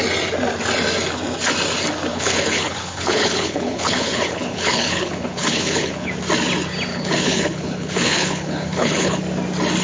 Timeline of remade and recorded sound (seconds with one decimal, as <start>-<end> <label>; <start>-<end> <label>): 0.0-2.1 recorded; 2.1-6.1 remade; 6.1-6.9 recorded; 6.9-9.2 remade; 9.2-9.8 recorded